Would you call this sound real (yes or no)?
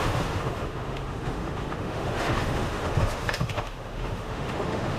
no